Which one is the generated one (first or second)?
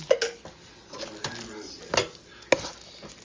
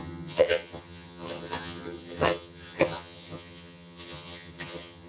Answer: second